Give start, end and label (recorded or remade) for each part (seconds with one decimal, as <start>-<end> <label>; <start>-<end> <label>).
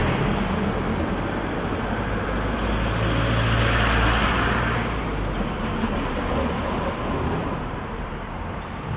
0.0-7.4 recorded; 7.4-8.5 remade; 8.5-9.0 recorded